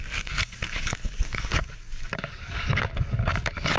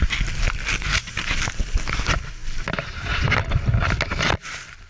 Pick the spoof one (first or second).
first